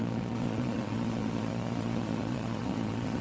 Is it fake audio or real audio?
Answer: fake